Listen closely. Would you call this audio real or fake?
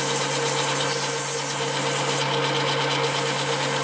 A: real